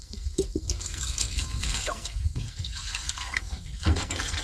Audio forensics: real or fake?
fake